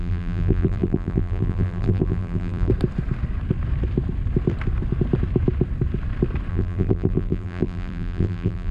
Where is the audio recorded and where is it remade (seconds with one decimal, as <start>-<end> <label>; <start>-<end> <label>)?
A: 0.0-2.7 remade; 2.7-6.5 recorded; 6.5-8.7 remade